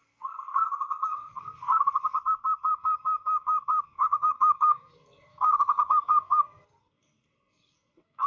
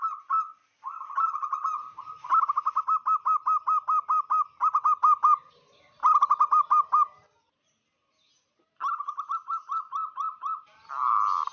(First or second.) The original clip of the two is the second